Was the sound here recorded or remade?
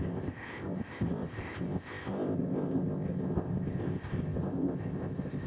remade